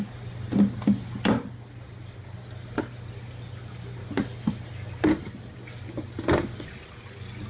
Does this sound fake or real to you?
real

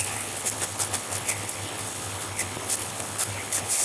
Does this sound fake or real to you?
fake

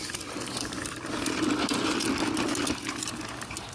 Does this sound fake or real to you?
real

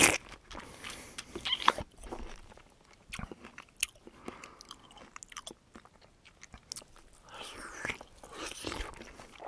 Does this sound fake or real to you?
real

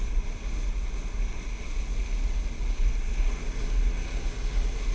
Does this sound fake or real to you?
real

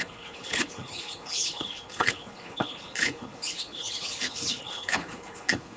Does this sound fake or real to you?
fake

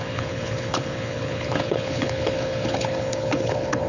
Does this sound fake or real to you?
fake